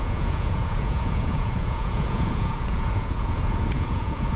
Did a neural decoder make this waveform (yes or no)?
yes